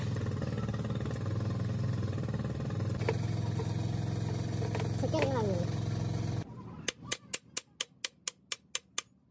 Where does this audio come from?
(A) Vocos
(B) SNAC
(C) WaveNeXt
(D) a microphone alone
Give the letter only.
D